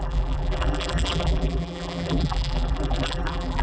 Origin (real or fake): fake